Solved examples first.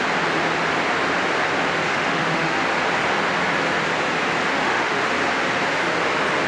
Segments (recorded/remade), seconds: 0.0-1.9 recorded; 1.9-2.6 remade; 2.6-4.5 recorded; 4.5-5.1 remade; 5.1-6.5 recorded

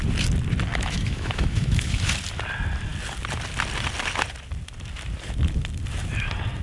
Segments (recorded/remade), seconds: 0.0-0.7 recorded; 0.7-2.0 remade; 2.0-6.6 recorded

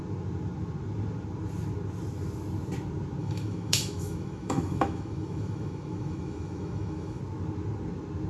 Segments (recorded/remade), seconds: 0.0-3.2 recorded; 3.2-7.2 remade; 7.2-8.3 recorded